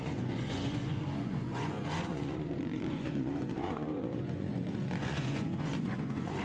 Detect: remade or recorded remade